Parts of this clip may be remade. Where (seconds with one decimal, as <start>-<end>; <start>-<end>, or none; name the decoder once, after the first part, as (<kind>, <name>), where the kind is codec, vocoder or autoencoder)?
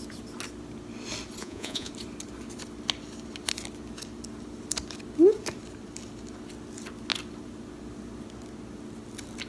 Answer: 1.4-1.9 (vocoder, Vocos)